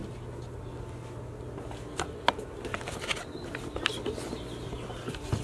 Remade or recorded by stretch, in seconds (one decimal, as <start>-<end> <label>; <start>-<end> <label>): 0.0-5.4 recorded